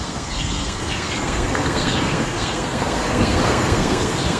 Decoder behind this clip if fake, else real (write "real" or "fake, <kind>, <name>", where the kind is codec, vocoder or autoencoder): fake, codec, SNAC